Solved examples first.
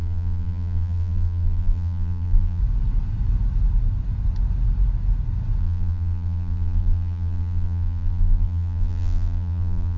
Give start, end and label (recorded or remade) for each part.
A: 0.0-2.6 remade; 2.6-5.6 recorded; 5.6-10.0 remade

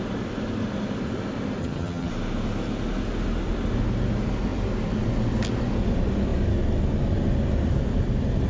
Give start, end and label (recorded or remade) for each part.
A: 0.0-1.6 recorded; 1.6-2.1 remade; 2.1-8.5 recorded

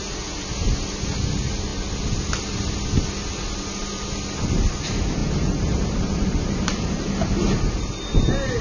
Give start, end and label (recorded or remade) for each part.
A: 0.0-5.2 recorded; 5.2-7.0 remade; 7.0-8.6 recorded

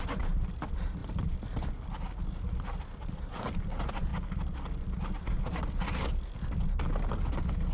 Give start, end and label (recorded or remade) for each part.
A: 0.0-7.7 recorded

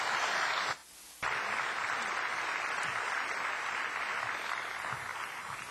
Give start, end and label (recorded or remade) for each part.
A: 0.0-5.7 recorded

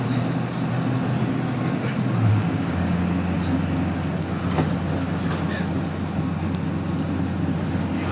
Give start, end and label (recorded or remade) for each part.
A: 0.0-2.3 recorded; 2.3-3.0 remade; 3.0-8.1 recorded

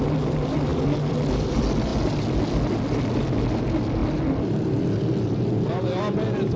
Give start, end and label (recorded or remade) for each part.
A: 0.0-6.6 recorded